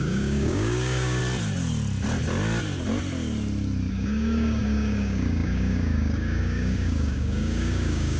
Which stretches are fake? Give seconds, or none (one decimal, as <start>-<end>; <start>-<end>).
0.0-1.2; 3.9-8.2